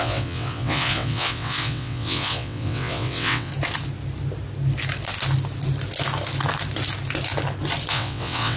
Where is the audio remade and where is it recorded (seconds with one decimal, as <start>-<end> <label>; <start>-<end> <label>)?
0.0-3.5 remade; 3.5-7.9 recorded; 7.9-8.6 remade